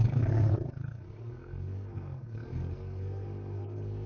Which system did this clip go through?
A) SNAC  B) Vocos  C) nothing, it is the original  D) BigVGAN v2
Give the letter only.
A